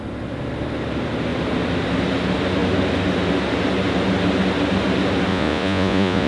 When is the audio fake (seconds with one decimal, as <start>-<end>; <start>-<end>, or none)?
5.3-6.3